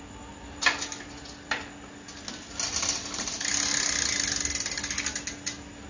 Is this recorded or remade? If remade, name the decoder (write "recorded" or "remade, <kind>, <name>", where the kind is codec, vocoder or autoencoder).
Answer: recorded